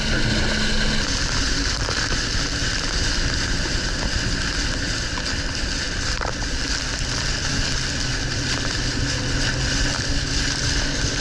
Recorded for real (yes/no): yes